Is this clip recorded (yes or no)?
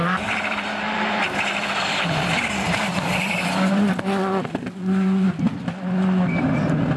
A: no